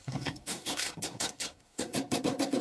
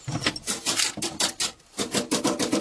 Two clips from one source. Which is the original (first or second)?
second